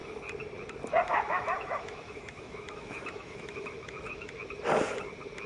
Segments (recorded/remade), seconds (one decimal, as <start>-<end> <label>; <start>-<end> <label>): 0.0-1.1 recorded; 1.1-4.4 remade; 4.4-5.5 recorded